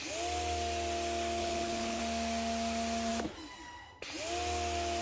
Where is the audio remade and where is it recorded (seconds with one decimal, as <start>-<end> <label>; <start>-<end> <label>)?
0.0-1.4 recorded; 1.4-2.0 remade; 2.0-5.0 recorded